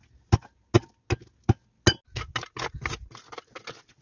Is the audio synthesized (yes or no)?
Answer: no